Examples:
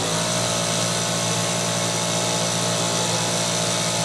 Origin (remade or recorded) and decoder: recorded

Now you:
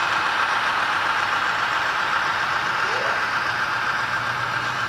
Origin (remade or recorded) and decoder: remade, vocoder, BigVGAN v2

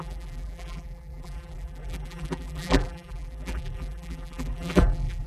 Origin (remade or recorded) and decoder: remade, vocoder, BigVGAN v2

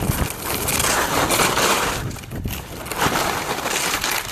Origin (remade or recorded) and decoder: recorded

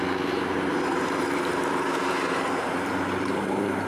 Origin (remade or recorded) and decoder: remade, vocoder, BigVGAN v2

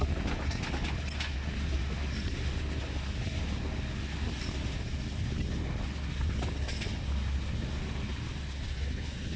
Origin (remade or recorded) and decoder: recorded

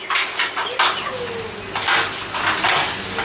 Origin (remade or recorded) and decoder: recorded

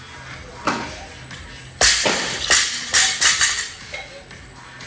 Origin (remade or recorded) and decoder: recorded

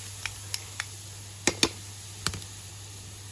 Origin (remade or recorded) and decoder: recorded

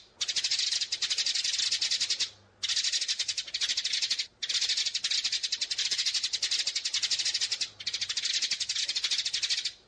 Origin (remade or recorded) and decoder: recorded